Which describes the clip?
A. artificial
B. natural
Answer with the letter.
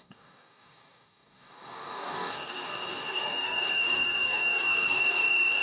A